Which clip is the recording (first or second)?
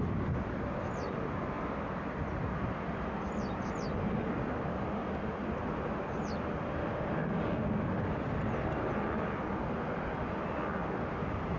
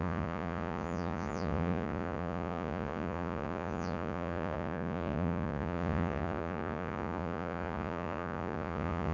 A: first